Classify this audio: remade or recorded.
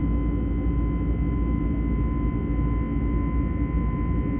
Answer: recorded